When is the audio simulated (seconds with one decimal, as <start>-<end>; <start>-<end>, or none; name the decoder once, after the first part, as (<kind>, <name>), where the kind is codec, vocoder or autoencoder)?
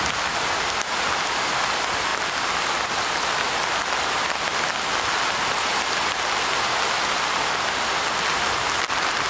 none